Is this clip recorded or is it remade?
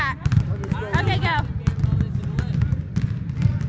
recorded